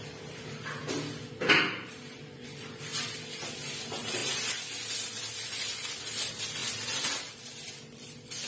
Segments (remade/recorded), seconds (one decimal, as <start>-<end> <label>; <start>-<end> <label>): 0.0-8.5 recorded